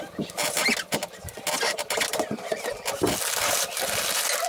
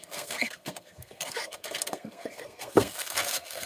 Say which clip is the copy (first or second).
second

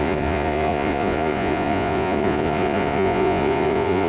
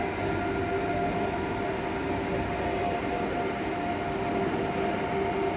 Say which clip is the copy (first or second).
first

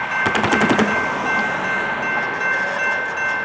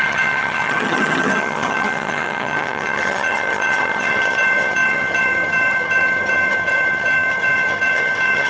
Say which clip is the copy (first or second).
second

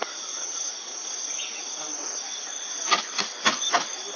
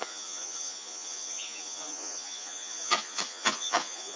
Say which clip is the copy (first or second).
second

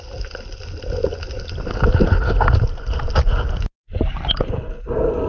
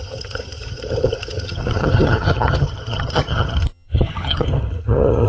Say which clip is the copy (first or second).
second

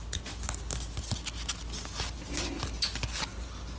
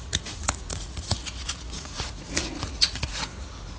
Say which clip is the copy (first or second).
second